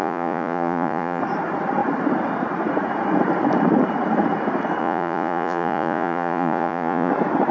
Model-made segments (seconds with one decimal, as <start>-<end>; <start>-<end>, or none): 0.0-1.2; 4.8-7.1